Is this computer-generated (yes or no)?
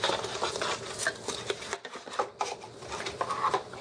no